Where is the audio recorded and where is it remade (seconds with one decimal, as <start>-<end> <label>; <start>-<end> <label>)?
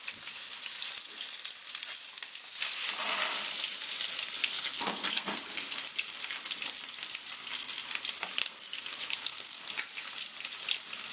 0.0-4.4 recorded; 4.4-5.4 remade; 5.4-8.4 recorded; 8.4-9.7 remade; 9.7-11.1 recorded